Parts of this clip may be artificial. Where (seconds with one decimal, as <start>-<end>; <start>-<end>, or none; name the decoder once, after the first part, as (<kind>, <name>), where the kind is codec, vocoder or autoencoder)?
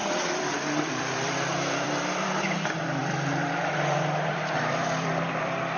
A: 0.0-5.8 (vocoder, BigVGAN v2)